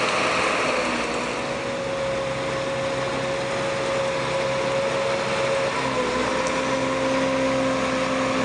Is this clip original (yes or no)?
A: yes